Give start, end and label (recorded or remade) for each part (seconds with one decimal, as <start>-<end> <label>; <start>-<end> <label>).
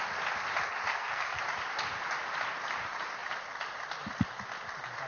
0.0-0.9 recorded; 0.9-1.4 remade; 1.4-5.1 recorded